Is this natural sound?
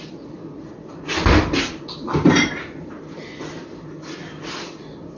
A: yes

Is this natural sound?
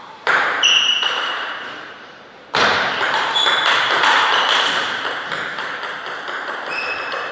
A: no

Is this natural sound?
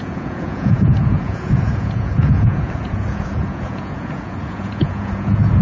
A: no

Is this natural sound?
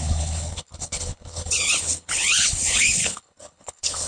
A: no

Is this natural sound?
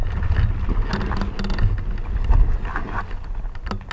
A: yes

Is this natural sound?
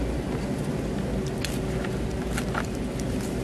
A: yes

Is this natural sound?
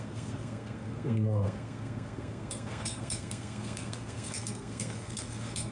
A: no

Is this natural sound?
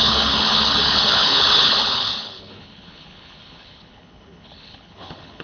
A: no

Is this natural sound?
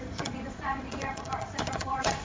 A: no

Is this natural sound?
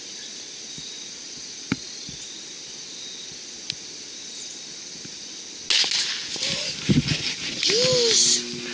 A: yes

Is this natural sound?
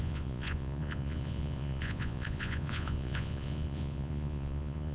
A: no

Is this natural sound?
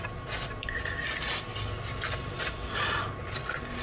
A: yes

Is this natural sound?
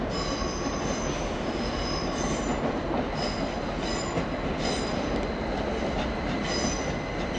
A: yes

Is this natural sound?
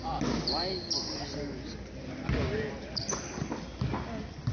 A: yes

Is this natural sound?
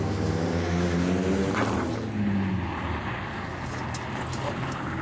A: yes